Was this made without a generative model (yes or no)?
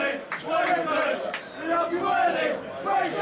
yes